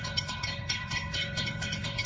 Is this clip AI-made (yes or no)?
yes